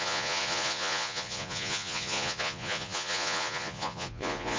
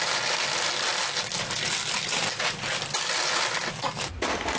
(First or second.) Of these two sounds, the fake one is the first